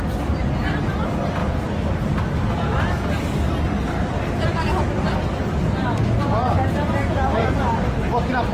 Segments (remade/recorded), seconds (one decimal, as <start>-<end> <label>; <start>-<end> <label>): 0.0-8.5 recorded